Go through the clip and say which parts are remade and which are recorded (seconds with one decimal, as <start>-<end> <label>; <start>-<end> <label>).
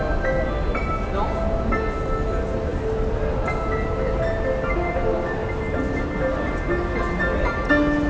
0.0-8.1 recorded